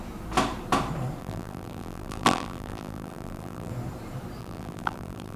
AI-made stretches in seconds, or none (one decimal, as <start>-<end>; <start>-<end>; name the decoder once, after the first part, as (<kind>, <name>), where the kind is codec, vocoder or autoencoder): 1.2-3.7 (vocoder, BigVGAN v2); 4.4-5.4